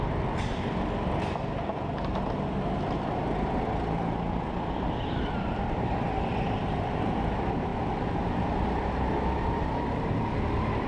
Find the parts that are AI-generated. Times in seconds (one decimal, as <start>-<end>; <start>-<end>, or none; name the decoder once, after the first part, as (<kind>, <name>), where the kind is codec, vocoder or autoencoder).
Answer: none

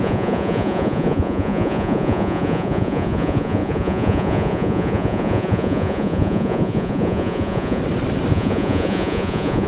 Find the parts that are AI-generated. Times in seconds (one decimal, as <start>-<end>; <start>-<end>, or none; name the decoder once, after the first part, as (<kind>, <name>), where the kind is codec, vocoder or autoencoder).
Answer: 0.0-7.8 (vocoder, Vocos); 8.3-9.7

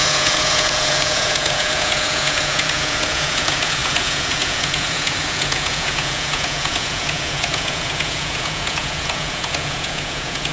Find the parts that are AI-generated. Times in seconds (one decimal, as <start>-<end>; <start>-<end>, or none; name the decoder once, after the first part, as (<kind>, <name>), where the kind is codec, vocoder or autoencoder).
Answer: 0.0-10.5 (vocoder, Vocos)

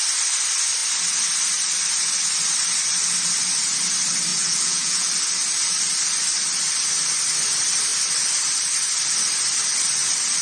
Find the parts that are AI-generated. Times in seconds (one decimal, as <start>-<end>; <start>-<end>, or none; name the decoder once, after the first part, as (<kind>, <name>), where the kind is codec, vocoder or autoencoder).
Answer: 4.3-5.1 (vocoder, Vocos)